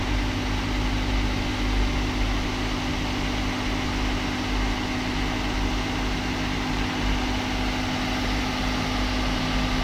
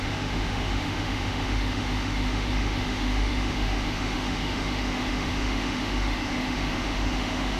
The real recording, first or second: first